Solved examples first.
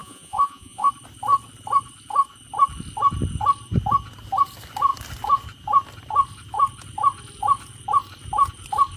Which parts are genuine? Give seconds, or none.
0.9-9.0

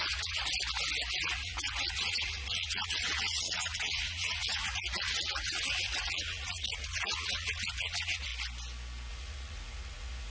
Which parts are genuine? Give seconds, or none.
0.4-1.2; 8.3-9.1

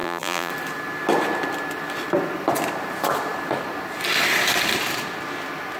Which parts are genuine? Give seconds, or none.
0.5-5.8

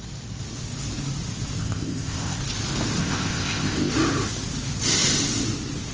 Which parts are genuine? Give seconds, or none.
0.0-1.6; 2.4-3.0; 3.9-5.9

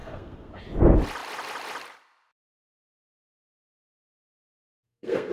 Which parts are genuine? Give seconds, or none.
0.6-4.4

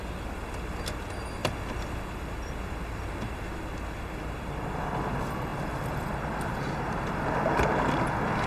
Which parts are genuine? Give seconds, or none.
0.0-8.5

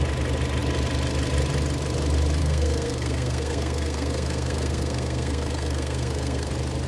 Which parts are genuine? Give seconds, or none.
0.0-2.4; 6.5-6.9

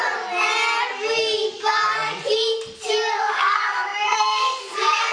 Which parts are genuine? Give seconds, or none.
0.0-3.1